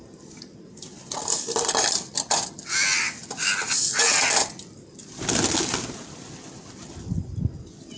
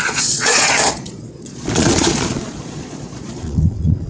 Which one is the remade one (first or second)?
second